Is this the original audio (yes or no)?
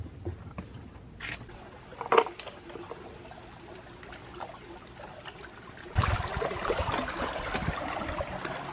yes